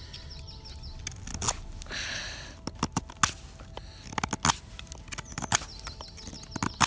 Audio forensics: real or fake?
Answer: real